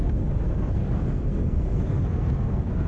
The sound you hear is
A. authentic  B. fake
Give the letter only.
B